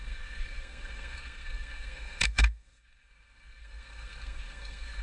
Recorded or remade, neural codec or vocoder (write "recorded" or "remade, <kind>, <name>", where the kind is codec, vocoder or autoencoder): remade, codec, SNAC